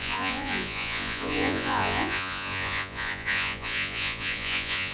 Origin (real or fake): fake